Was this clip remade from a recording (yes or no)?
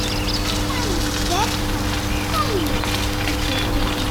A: no